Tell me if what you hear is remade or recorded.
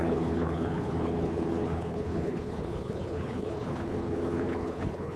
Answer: remade